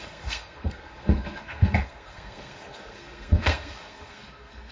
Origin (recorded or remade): remade